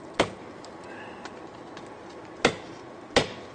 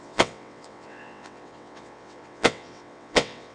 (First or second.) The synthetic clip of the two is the second